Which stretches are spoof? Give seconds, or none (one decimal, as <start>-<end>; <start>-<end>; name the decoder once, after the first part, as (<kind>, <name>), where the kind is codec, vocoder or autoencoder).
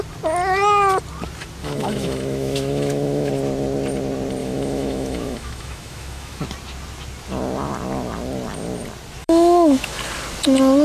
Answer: 1.6-3.3 (autoencoder, DAC-VAE); 4.4-6.4; 9.2-10.0